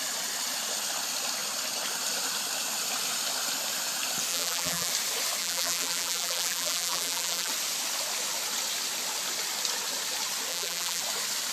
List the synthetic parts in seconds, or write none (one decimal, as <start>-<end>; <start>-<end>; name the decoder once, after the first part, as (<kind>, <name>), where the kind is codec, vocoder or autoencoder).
4.3-4.9 (vocoder, BigVGAN v2); 5.4-7.5; 10.5-11.0